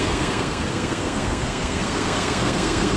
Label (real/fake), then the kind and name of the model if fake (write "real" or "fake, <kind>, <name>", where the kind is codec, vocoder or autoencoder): fake, codec, SNAC